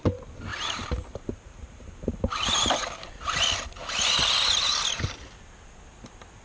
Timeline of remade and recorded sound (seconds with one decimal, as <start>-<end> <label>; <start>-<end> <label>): 0.0-0.5 recorded; 0.5-3.2 remade; 3.2-6.4 recorded